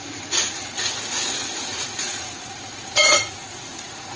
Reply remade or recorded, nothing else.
remade